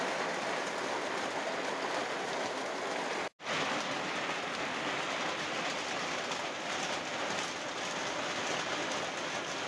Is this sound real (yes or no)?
yes